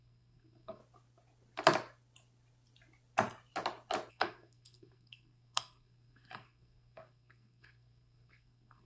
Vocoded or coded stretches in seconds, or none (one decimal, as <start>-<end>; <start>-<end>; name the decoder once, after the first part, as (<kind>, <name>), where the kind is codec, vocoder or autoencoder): 0.0-0.8 (codec, SNAC); 4.1-8.8